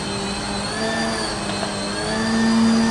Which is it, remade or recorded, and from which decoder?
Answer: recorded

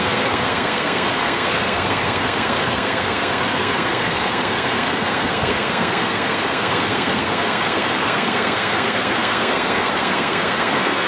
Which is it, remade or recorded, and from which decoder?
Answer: remade, codec, SNAC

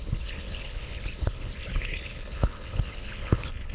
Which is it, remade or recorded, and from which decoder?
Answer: remade, codec, HILCodec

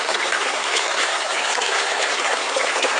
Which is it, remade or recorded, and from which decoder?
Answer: remade, codec, SNAC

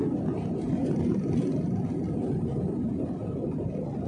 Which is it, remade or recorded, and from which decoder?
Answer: recorded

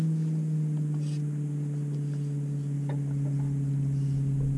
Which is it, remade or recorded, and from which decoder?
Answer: recorded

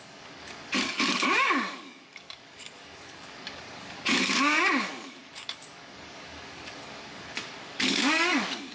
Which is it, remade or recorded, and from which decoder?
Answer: remade, codec, DAC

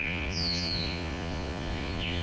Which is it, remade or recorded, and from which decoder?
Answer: remade, vocoder, Vocos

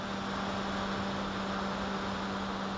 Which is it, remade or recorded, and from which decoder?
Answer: recorded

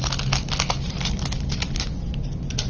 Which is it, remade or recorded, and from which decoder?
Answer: recorded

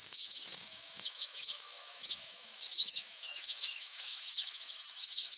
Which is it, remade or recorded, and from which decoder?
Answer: remade, autoencoder, DAC-VAE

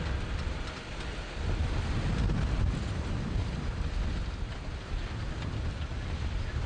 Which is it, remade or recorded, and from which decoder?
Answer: recorded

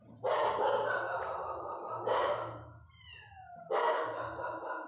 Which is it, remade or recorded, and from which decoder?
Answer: recorded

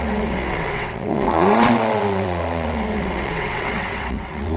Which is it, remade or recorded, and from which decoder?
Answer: remade, vocoder, WaveNeXt